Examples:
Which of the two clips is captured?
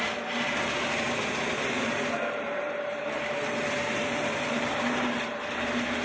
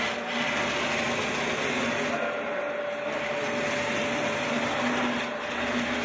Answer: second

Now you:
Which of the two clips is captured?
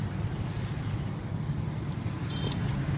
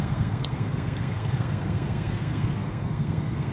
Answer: first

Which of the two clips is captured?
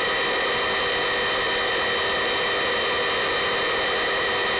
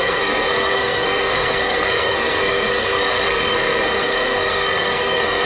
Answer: first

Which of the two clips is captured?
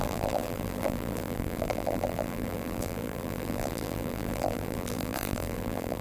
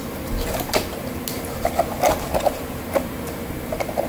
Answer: second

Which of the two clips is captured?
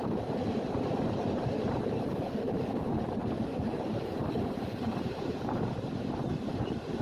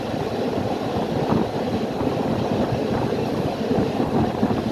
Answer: second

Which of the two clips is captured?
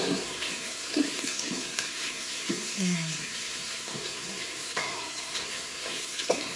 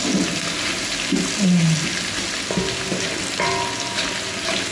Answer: second